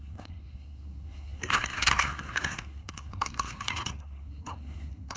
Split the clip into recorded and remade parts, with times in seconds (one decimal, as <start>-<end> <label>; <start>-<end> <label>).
0.0-5.2 remade